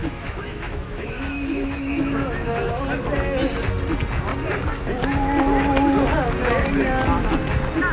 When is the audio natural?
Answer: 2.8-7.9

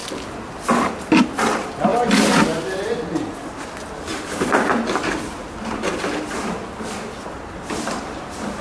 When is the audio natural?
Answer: 0.0-8.6

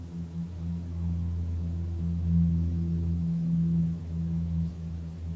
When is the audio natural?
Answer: none

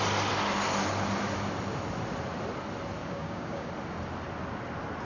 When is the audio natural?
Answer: 0.0-3.0; 3.7-5.0

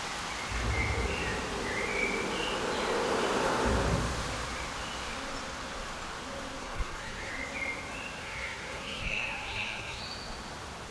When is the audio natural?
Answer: 0.0-6.6; 7.3-8.2; 10.0-10.9

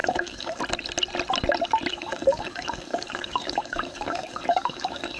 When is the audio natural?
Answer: 0.6-1.9

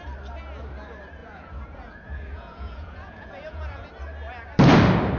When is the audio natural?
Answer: 0.0-1.2; 3.9-5.2

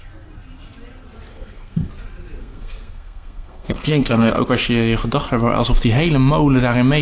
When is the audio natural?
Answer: 0.0-1.3; 1.9-2.4; 4.3-7.0